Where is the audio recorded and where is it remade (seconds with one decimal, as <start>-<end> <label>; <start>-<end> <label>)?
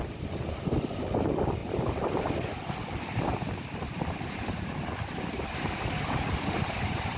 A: 0.0-1.6 recorded; 1.6-5.9 remade; 5.9-7.2 recorded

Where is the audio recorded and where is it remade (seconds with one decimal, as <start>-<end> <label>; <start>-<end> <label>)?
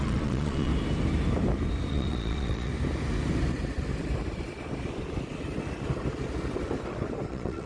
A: 0.0-0.7 remade; 0.7-1.9 recorded; 1.9-2.7 remade; 2.7-7.3 recorded; 7.3-7.7 remade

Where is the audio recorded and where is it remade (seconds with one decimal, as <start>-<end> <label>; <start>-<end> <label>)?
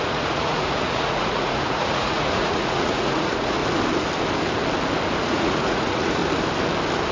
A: 0.0-3.6 remade; 3.6-5.2 recorded; 5.2-6.2 remade; 6.2-7.1 recorded